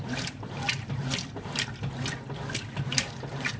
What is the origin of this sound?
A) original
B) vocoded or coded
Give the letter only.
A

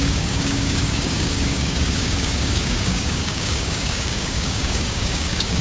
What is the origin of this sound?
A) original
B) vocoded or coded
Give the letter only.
B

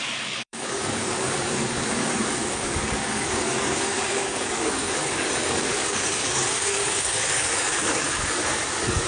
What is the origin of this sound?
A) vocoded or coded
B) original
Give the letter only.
A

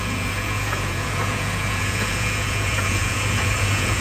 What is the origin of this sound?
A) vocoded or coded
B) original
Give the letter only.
A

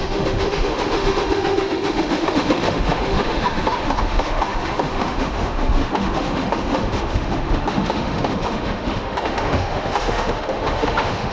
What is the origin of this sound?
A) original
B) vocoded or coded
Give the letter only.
B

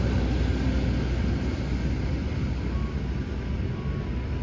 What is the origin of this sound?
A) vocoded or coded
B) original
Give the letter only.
B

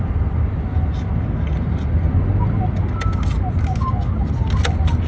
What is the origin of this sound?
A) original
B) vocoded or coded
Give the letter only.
A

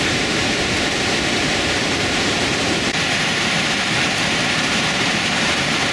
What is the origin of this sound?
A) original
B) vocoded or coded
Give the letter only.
B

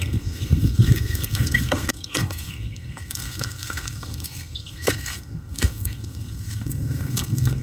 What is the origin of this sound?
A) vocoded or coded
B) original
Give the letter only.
A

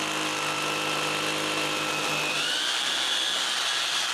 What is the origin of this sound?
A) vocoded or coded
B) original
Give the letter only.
B